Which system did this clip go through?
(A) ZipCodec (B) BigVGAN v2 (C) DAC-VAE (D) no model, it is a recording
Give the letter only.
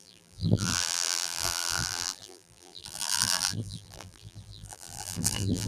B